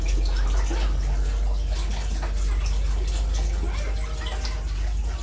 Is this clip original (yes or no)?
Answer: yes